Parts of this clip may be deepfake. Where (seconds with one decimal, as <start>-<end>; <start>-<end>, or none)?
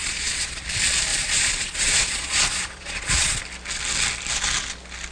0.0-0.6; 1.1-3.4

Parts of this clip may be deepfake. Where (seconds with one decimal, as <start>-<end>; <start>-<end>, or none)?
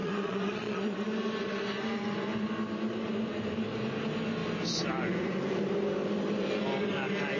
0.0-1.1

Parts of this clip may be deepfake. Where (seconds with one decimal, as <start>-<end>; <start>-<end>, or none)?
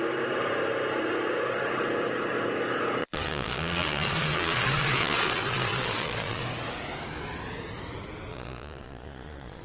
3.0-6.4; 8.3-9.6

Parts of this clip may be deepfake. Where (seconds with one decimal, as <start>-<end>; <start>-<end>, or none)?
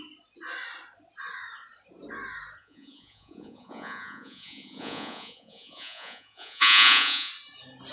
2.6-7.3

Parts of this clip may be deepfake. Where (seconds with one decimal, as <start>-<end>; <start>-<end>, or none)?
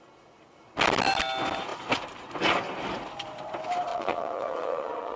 3.9-5.2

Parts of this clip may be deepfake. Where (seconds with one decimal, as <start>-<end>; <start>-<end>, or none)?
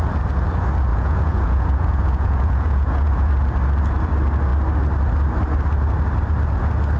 0.9-3.3